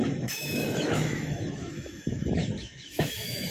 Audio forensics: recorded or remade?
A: remade